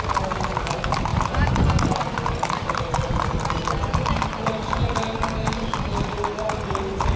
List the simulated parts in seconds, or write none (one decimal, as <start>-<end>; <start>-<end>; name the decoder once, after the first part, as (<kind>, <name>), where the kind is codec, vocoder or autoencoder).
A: none